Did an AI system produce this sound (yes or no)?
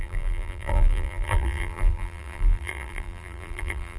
yes